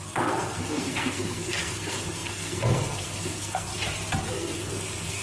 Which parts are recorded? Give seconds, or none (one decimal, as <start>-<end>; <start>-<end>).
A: 3.7-4.3

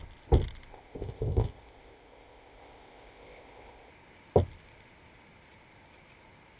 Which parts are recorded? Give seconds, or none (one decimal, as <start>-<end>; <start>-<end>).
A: 0.0-0.7; 3.9-6.6

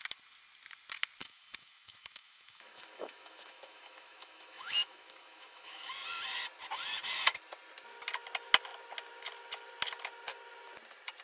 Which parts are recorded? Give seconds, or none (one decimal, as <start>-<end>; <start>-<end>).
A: 0.0-1.2; 5.9-11.2

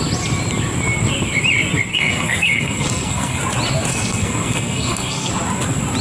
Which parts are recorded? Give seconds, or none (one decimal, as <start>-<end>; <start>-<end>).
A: 0.0-1.9; 3.4-3.9; 5.3-6.0